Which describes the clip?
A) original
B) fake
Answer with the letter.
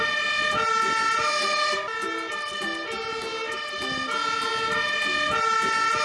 A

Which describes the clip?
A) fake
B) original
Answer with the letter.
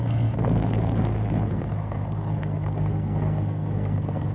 A